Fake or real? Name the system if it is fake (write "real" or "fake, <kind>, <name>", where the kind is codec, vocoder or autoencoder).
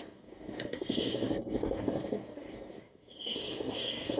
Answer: fake, codec, SNAC